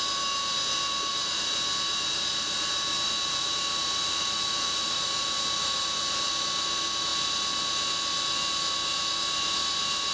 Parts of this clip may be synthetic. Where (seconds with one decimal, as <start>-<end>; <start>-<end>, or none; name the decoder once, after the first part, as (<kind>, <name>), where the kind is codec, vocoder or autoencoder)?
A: 1.1-6.3 (vocoder, BigVGAN v2)